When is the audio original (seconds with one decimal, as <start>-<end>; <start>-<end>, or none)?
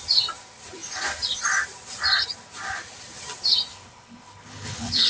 0.0-3.7